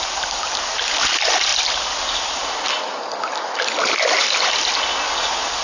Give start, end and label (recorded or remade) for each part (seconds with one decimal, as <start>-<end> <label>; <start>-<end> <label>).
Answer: 0.0-5.6 recorded